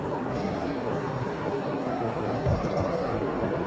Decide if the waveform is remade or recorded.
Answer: remade